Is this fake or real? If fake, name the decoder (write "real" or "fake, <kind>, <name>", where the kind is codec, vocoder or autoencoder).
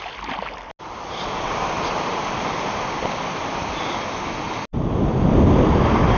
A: real